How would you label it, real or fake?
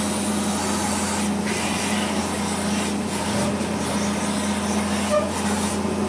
real